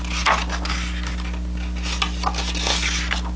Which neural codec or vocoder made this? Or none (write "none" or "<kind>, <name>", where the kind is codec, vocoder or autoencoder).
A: none